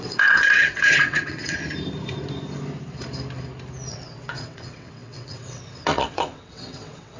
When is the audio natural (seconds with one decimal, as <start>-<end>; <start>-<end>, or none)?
1.6-3.9